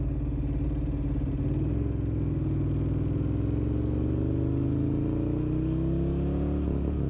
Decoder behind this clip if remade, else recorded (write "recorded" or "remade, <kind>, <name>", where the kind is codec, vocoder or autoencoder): recorded